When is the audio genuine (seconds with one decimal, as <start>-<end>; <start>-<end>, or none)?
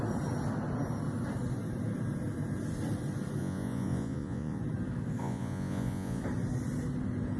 0.0-3.4; 4.6-5.2; 6.2-7.4